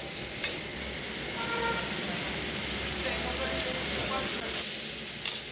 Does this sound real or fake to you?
real